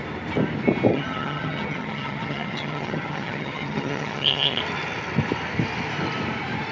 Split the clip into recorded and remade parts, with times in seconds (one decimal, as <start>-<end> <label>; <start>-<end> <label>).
0.0-0.9 recorded; 0.9-4.6 remade; 4.6-6.7 recorded